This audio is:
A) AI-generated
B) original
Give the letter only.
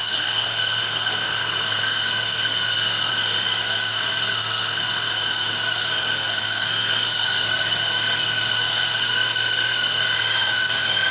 A